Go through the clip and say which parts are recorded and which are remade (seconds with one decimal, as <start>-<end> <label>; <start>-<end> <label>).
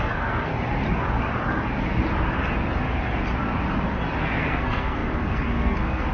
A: 0.0-0.5 remade; 0.5-4.2 recorded; 4.2-6.1 remade